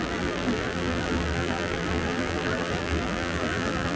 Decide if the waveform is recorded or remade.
remade